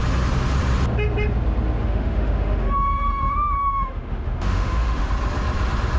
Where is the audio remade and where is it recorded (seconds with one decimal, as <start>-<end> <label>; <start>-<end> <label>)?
0.0-1.8 recorded; 1.8-5.1 remade; 5.1-6.0 recorded